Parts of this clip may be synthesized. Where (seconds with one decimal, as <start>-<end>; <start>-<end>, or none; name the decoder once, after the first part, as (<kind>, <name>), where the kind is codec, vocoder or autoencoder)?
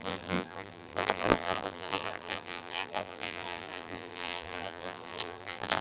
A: 0.0-5.8 (vocoder, BigVGAN v2)